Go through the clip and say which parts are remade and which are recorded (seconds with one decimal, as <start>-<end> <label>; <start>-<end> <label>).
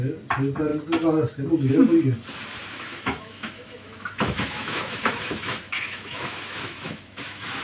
0.0-2.6 recorded; 2.6-7.6 remade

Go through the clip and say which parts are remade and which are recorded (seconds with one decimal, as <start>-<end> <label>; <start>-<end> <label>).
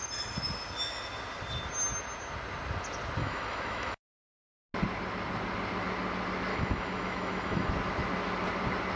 0.0-3.2 recorded; 3.2-4.5 remade; 4.5-6.5 recorded; 6.5-7.7 remade; 7.7-9.0 recorded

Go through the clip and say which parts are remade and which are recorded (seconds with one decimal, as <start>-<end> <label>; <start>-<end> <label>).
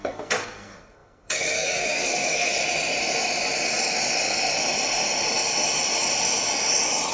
0.0-2.5 remade; 2.5-7.1 recorded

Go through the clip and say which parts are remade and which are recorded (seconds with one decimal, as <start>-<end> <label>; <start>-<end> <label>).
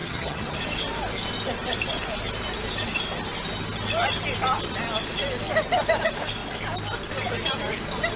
0.0-0.6 remade; 0.6-8.2 recorded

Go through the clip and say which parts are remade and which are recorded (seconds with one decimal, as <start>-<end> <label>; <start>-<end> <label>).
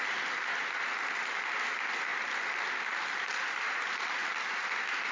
0.0-5.1 recorded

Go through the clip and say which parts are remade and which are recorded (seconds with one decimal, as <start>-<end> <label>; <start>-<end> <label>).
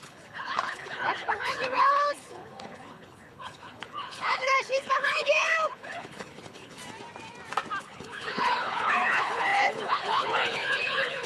0.0-6.8 remade; 6.8-7.8 recorded; 7.8-11.3 remade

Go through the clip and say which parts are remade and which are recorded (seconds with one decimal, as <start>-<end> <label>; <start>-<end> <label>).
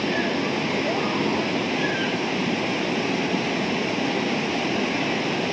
0.0-5.5 recorded